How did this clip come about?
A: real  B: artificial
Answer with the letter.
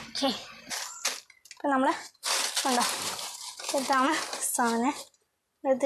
A